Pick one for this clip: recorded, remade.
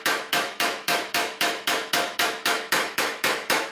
remade